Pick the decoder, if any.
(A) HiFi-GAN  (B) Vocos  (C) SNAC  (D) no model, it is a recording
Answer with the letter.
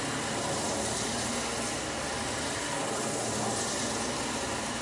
D